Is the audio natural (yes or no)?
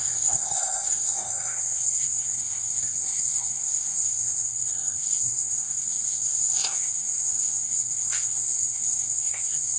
no